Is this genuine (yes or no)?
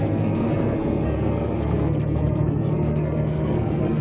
no